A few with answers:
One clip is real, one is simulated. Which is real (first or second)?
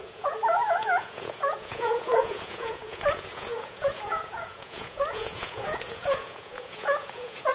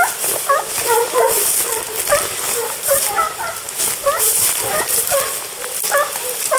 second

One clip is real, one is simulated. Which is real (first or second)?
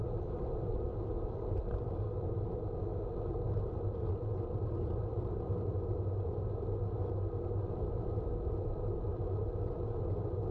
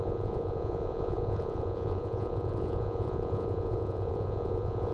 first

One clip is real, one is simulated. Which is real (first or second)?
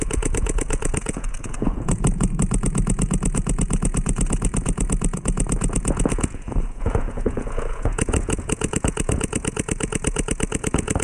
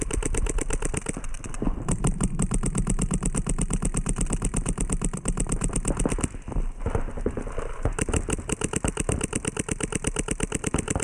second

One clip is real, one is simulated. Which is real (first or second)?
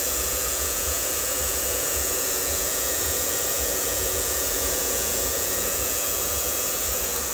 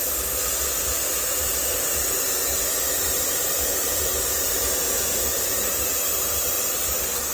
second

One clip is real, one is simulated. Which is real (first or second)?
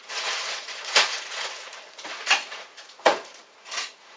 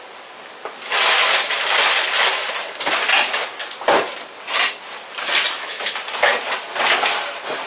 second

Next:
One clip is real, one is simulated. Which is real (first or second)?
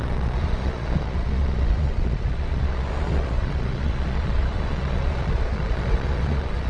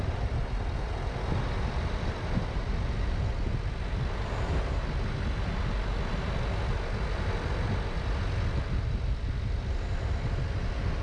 second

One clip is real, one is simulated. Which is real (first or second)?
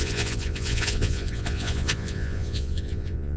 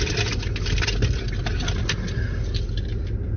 second